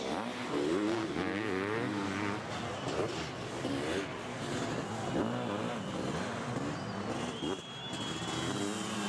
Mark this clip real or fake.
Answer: real